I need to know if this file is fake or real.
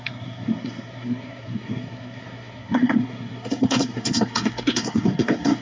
fake